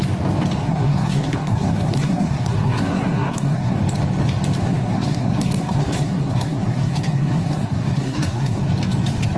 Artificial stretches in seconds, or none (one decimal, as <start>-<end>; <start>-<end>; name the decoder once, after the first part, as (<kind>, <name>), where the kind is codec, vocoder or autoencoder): 0.6-3.8 (codec, SNAC); 4.6-8.6